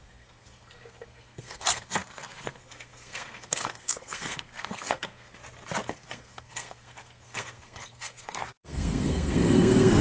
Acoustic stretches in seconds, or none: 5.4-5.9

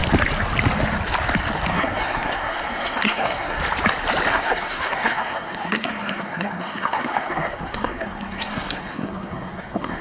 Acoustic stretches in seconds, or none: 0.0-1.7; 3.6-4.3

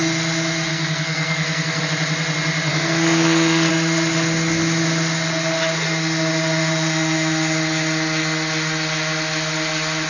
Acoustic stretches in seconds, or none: 0.0-0.7; 1.8-2.7; 3.7-10.1

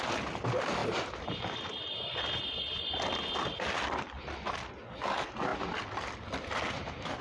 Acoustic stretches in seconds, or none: 0.0-7.2

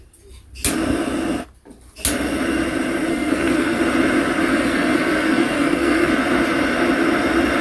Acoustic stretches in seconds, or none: 0.0-3.1; 3.8-4.5; 6.1-7.6